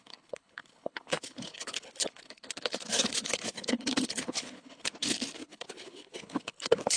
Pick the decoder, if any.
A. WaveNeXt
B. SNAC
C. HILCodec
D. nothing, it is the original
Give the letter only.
C